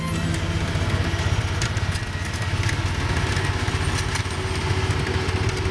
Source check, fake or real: real